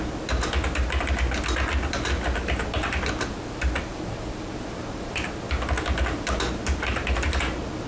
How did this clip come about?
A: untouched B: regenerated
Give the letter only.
A